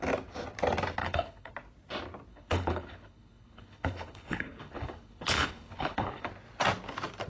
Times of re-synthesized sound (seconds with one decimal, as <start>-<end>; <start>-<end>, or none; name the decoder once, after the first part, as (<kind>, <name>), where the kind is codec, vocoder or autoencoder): 1.0-1.5 (codec, HILCodec); 2.3-6.3

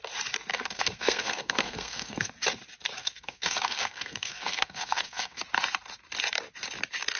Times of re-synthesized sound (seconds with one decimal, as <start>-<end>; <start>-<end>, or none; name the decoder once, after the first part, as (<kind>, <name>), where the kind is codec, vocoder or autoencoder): 0.5-2.3 (codec, SNAC); 3.0-5.4

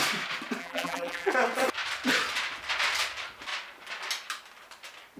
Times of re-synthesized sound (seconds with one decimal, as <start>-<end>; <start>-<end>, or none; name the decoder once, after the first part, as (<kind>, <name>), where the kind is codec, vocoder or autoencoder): 0.6-1.3 (vocoder, BigVGAN v2)

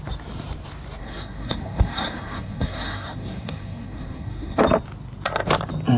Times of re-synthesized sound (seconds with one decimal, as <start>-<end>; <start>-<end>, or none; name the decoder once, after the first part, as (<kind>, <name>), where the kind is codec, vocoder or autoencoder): 1.0-4.6 (codec, SNAC)

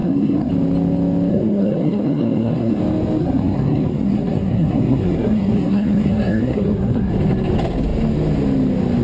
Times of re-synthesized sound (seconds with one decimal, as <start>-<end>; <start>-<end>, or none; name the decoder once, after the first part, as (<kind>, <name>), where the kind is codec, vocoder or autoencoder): 0.0-0.5 (codec, SNAC); 1.3-2.8; 3.2-7.1

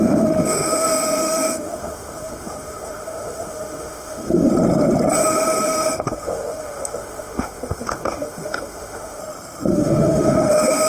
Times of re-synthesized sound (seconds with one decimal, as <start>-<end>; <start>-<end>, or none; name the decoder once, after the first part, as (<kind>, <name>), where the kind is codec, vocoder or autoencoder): 0.0-4.5 (autoencoder, DAC-VAE); 5.2-9.2; 9.7-10.9

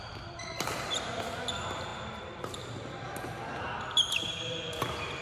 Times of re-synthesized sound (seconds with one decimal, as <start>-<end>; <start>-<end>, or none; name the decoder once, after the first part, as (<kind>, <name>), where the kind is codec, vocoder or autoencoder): none